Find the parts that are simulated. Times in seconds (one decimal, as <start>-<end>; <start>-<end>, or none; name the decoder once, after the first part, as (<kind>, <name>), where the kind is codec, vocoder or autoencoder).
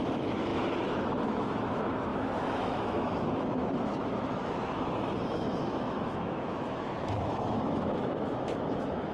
0.0-9.1 (autoencoder, DAC-VAE)